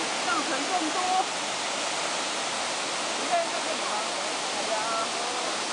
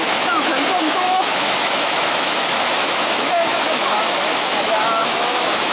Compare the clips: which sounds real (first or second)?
first